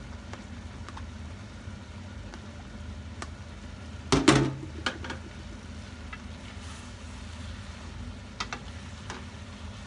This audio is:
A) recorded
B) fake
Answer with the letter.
A